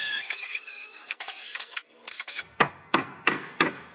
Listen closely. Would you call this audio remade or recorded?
remade